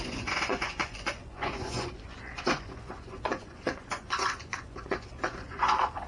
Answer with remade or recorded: remade